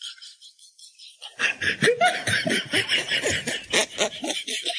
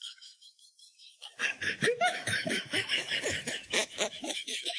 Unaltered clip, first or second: first